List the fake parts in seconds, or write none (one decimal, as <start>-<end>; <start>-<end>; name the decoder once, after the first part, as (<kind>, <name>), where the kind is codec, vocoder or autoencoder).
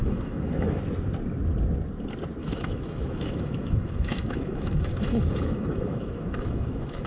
0.0-0.8 (autoencoder, DAC-VAE); 2.4-7.1